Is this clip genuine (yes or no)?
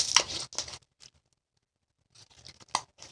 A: yes